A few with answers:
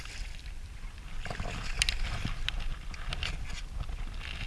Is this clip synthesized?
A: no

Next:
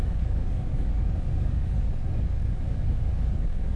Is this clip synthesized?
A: yes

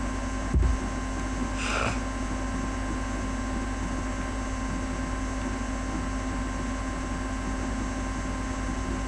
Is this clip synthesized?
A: no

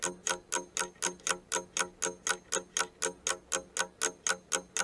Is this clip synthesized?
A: no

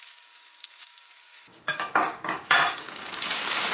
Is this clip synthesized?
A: yes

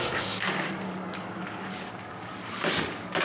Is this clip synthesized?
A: yes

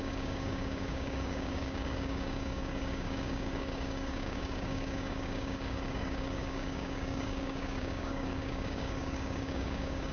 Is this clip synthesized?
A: yes